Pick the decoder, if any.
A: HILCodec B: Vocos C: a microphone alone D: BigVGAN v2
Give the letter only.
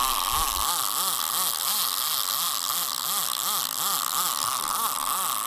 C